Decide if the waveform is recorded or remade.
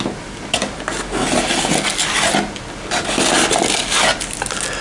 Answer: recorded